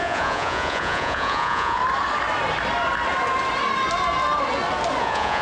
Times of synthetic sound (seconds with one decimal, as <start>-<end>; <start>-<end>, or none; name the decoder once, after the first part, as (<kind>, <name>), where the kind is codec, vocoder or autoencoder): 0.0-1.8 (vocoder, Vocos); 5.0-5.4